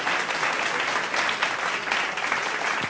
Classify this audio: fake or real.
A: real